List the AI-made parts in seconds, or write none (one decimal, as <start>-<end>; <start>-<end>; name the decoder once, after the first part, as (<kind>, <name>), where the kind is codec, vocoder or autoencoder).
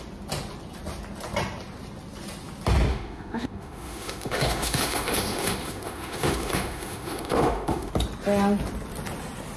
2.9-7.9 (autoencoder, DAC-VAE)